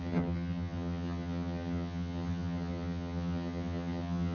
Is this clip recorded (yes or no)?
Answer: no